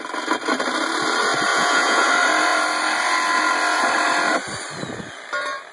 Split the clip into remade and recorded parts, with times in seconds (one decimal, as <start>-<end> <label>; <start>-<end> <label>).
0.0-1.5 recorded; 1.5-2.1 remade; 2.1-5.7 recorded